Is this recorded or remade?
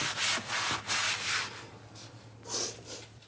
recorded